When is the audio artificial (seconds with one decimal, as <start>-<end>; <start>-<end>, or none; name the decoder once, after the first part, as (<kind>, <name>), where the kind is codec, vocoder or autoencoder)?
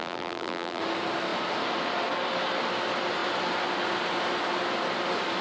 0.0-0.8 (vocoder, BigVGAN v2)